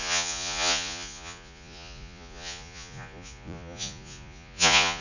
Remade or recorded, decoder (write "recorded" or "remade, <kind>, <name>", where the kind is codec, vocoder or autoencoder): remade, vocoder, Vocos